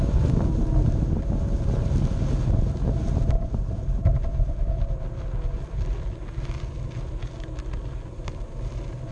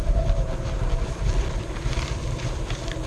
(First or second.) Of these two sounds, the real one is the first